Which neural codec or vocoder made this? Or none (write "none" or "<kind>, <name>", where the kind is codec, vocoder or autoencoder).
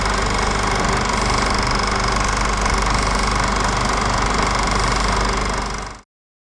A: none